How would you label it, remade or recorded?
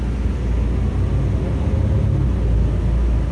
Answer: recorded